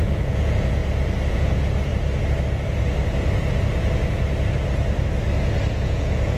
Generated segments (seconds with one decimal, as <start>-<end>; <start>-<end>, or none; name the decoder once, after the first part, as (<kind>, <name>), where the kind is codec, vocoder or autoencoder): 0.0-0.8 (vocoder, Vocos); 1.3-1.9; 5.7-6.4